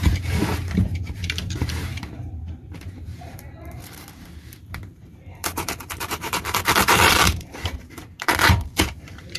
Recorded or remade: remade